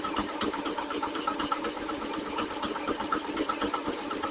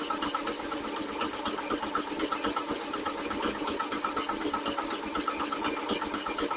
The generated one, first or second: first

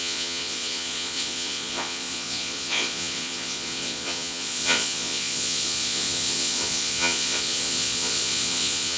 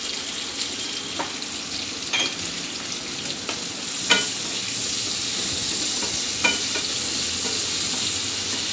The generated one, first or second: first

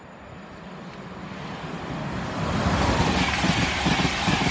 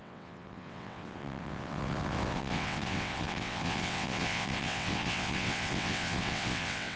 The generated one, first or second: second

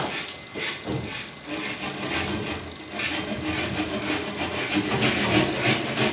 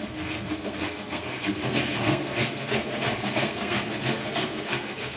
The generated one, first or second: second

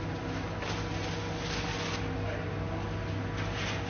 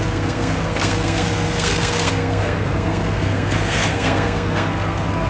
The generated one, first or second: second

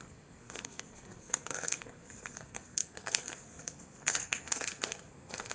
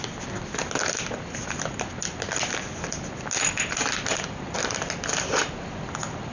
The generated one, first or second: first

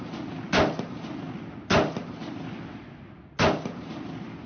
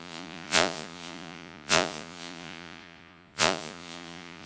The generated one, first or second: second